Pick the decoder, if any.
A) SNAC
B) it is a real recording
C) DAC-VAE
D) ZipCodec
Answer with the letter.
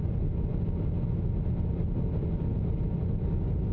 B